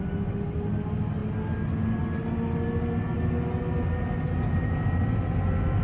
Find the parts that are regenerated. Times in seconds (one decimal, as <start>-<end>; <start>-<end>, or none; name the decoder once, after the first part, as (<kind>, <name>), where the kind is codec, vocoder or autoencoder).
none